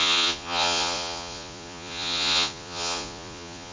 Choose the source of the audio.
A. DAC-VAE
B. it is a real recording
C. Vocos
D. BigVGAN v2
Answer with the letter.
C